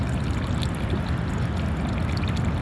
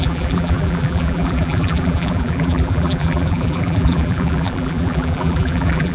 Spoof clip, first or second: second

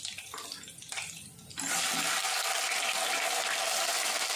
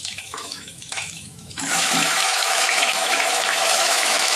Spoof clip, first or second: second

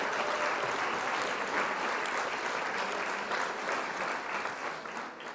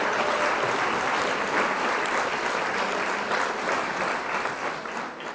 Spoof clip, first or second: second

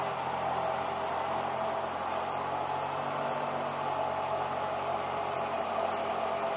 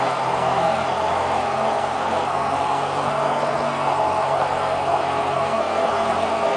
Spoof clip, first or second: second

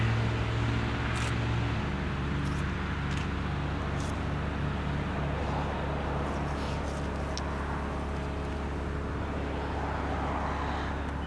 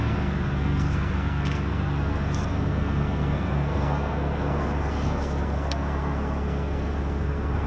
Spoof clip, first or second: second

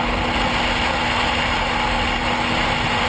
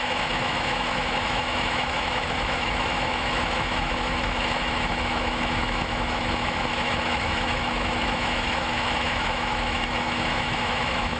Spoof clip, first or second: second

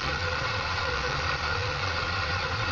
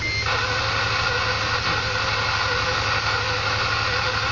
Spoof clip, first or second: first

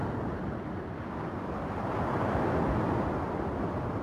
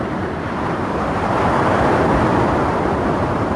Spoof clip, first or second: second